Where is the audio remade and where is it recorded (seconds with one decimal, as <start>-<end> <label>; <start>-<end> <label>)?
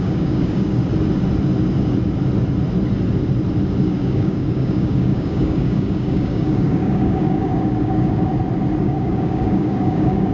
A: 0.0-0.8 remade; 0.8-3.8 recorded; 3.8-8.3 remade; 8.3-8.8 recorded; 8.8-10.3 remade